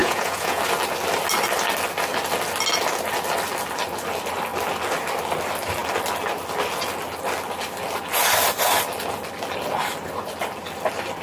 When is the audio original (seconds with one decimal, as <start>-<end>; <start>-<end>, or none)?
0.6-11.2